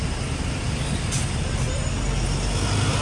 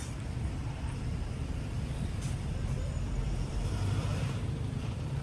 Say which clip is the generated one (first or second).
second